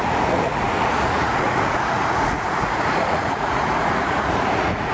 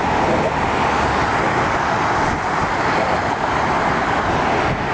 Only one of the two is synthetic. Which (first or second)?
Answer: first